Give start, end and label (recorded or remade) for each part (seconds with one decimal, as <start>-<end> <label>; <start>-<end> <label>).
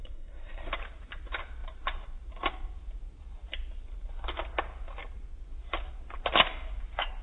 0.0-0.7 remade; 0.7-7.2 recorded